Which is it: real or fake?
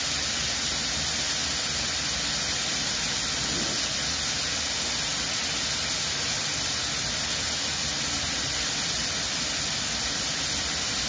real